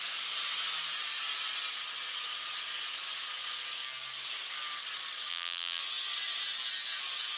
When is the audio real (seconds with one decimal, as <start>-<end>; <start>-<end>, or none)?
0.0-5.3; 5.8-7.4